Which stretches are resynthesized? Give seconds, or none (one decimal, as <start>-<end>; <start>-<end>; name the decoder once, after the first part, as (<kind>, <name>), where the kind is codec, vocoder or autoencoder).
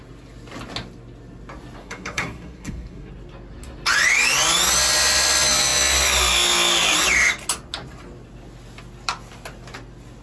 1.8-3.1 (codec, SNAC)